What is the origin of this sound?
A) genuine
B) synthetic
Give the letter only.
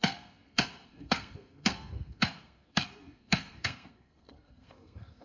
B